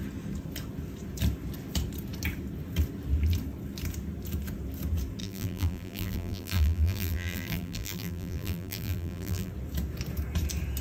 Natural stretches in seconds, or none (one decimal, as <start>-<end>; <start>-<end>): 0.0-5.2; 9.5-10.8